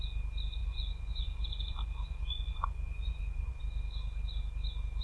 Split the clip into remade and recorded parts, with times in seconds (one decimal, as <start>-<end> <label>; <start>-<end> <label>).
0.0-0.6 recorded; 0.6-3.6 remade; 3.6-5.0 recorded